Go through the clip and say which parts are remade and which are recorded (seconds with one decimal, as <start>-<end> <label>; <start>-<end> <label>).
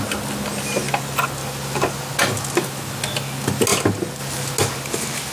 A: 0.0-5.3 recorded